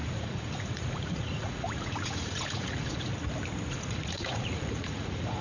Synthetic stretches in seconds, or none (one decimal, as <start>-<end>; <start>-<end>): 0.0-3.1; 3.7-5.4